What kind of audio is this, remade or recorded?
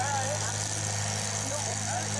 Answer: recorded